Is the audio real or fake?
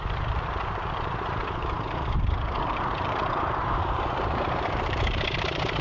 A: fake